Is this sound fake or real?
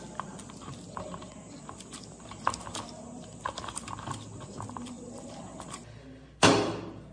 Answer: real